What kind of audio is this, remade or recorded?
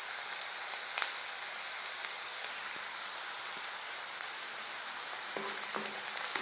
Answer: recorded